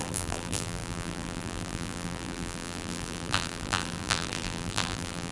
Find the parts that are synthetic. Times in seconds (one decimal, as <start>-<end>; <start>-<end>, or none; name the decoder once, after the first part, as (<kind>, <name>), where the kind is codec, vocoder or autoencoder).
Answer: 0.0-5.3 (vocoder, BigVGAN v2)